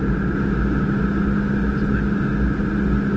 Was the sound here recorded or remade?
recorded